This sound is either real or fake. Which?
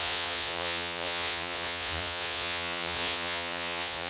fake